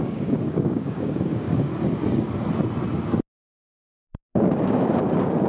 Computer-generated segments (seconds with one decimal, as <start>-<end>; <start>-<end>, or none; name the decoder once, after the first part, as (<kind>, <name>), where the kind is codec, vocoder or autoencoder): 0.0-1.7 (codec, DAC); 4.3-5.5